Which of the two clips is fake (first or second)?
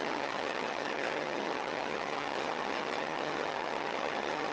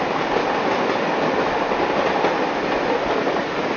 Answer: first